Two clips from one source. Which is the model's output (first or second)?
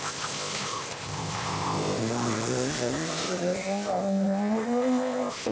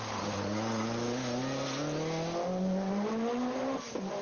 first